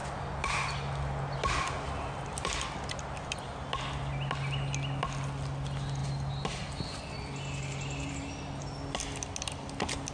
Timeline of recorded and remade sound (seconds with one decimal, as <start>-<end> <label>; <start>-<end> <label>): 0.0-10.1 recorded